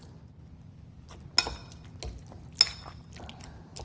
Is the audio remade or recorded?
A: recorded